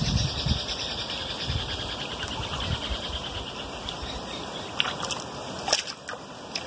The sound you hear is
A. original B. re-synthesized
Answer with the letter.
A